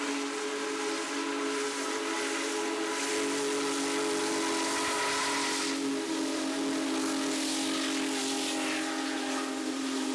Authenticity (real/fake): real